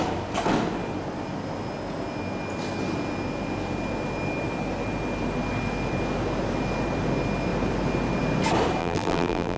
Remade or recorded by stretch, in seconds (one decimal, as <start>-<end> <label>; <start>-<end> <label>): 0.0-8.8 recorded; 8.8-9.6 remade